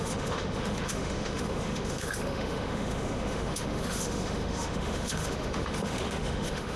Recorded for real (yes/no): no